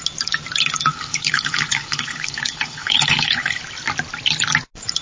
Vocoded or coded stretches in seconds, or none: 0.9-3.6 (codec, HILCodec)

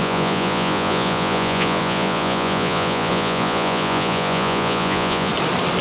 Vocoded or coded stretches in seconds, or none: 0.0-5.3 (vocoder, Vocos)